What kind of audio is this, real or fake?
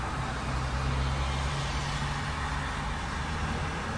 real